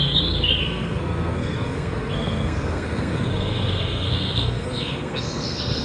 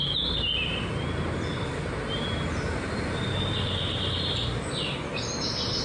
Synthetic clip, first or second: first